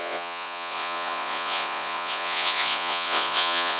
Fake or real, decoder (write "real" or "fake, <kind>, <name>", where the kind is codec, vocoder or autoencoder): fake, vocoder, Vocos